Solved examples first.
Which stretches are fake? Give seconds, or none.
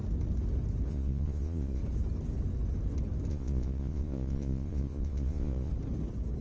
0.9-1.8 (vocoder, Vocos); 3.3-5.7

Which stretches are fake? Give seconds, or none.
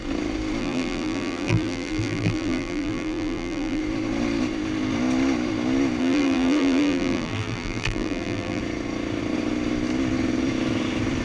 0.6-3.8 (vocoder, BigVGAN v2); 6.0-8.6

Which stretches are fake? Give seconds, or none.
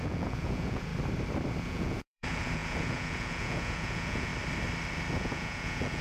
0.0-0.9 (vocoder, Vocos); 1.6-4.3; 5.1-6.0